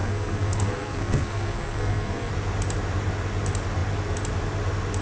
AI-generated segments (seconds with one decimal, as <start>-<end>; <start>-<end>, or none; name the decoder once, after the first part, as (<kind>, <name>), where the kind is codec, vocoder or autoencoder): 0.0-2.3 (codec, SNAC)